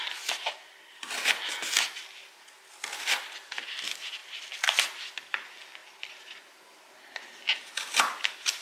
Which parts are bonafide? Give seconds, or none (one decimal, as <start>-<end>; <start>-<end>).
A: 0.0-5.8; 6.6-8.6